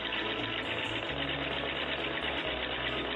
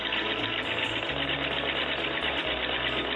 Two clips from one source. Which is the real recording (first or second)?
first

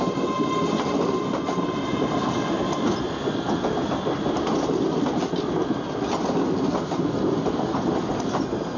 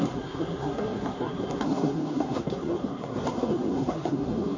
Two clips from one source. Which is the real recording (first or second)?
first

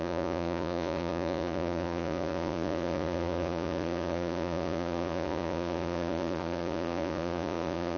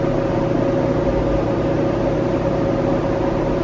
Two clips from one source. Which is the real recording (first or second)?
second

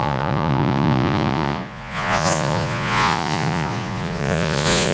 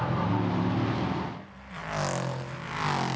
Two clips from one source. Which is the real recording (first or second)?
second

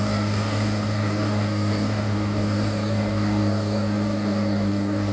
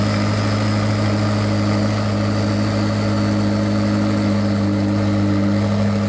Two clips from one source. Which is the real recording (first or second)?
second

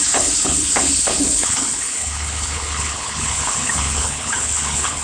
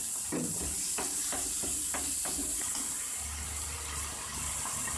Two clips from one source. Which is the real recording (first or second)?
second